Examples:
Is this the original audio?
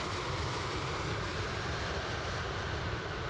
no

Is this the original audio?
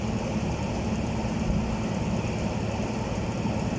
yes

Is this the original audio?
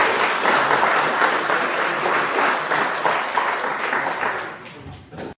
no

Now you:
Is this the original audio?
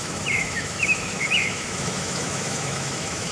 no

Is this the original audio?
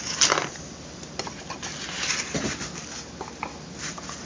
yes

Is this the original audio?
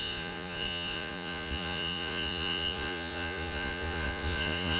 no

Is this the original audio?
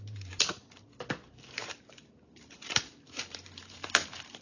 no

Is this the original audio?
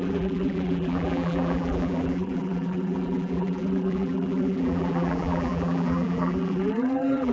no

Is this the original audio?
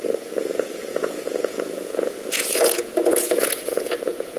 no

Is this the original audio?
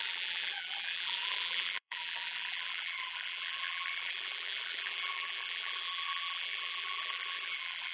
no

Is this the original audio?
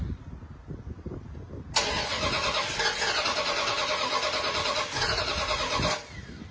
yes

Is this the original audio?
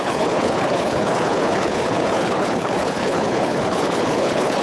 no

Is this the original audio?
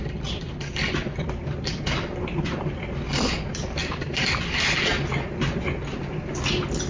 yes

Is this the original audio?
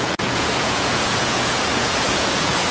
no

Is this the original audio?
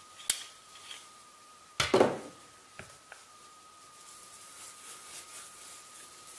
yes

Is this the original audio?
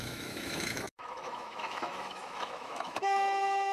no